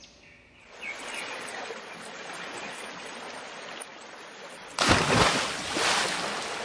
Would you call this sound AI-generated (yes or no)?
no